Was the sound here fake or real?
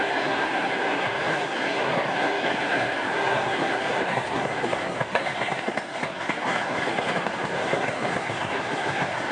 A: fake